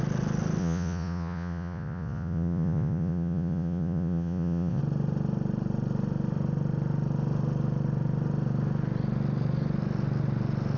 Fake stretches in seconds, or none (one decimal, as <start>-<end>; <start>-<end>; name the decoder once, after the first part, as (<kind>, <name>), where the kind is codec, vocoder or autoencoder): 0.6-4.8 (vocoder, Vocos)